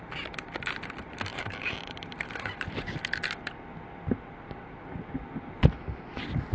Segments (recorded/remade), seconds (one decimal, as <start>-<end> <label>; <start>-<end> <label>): 0.0-1.3 recorded; 1.3-3.0 remade; 3.0-6.5 recorded